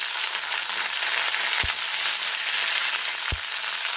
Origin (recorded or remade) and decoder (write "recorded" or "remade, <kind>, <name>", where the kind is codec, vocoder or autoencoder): recorded